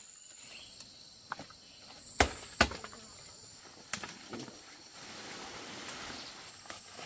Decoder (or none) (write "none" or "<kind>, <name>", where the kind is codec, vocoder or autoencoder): none